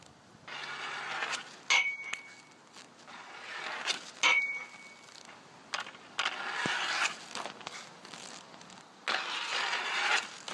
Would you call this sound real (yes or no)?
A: yes